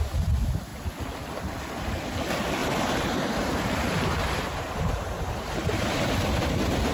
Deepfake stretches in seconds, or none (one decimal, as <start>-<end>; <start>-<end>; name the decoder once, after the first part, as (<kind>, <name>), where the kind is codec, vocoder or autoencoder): 2.6-6.9 (vocoder, BigVGAN v2)